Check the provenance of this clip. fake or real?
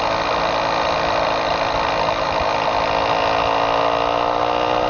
real